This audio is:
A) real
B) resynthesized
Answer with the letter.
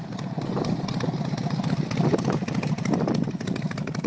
A